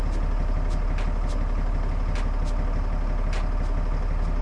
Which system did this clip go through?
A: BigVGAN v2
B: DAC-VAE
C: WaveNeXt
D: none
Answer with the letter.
D